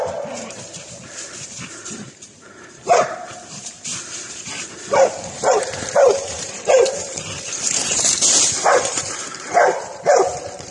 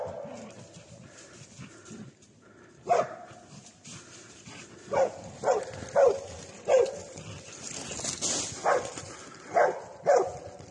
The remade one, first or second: first